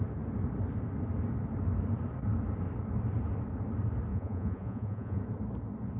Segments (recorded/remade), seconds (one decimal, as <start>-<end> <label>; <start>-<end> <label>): 0.0-4.1 recorded; 4.1-5.2 remade; 5.2-6.0 recorded